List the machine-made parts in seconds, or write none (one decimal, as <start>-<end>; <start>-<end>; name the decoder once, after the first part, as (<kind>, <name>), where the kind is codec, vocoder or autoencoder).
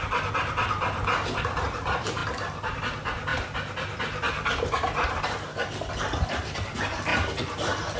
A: none